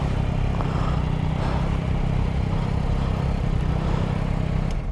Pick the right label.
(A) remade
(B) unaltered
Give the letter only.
B